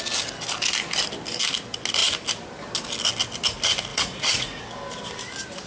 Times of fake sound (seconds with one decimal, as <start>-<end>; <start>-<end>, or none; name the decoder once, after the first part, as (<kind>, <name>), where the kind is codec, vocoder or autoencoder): 3.9-4.6 (vocoder, Vocos)